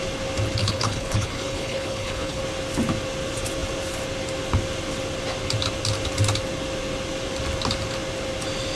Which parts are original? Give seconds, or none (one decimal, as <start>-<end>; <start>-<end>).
0.0-0.6; 2.4-8.8